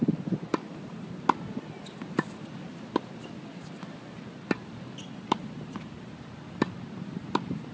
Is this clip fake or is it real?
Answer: real